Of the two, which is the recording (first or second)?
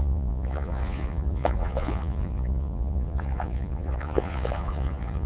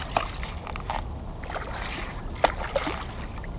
second